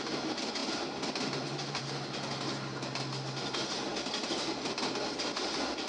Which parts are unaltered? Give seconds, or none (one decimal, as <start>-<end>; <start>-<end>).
0.0-0.6; 1.8-5.9